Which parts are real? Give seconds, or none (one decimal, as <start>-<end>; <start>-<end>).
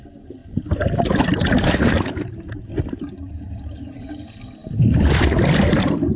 0.0-6.2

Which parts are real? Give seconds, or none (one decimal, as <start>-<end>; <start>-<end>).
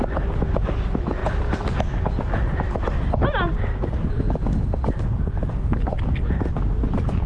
0.0-7.3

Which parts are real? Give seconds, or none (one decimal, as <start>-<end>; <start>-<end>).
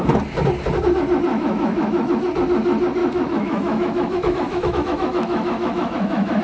0.0-1.3; 2.1-3.0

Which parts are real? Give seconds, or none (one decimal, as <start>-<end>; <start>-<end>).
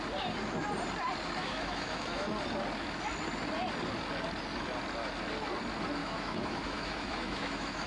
0.0-1.4; 2.3-6.0